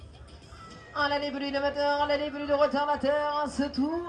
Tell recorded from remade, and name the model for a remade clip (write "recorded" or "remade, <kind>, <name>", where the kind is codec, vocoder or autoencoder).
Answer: recorded